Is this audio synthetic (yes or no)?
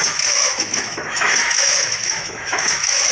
yes